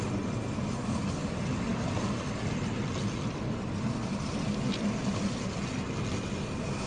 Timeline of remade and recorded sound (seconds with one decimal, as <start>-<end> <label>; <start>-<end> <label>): 0.0-6.9 recorded